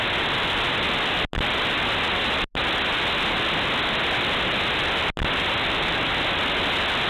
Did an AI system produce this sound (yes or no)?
no